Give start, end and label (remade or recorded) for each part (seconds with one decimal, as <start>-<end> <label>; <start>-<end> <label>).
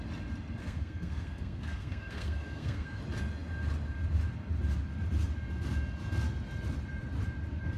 0.0-0.6 recorded; 0.6-3.0 remade; 3.0-7.8 recorded